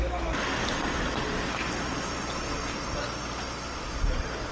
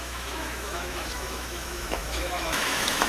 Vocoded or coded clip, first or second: second